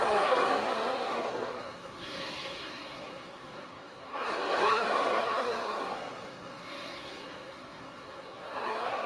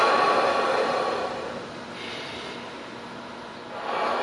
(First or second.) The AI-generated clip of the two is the first